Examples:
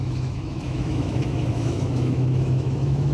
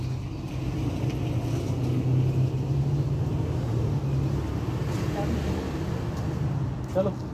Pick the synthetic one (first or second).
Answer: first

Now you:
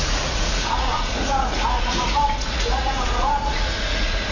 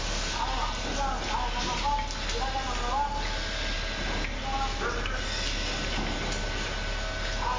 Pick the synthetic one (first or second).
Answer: first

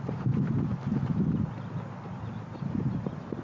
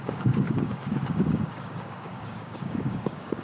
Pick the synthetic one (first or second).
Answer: second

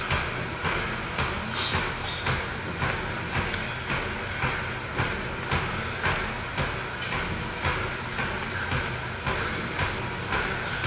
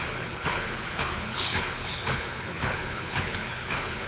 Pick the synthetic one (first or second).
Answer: second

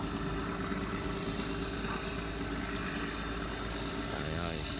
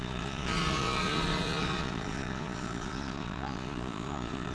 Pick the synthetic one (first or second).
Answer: second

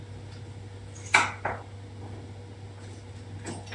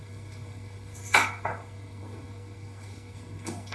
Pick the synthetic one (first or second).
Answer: second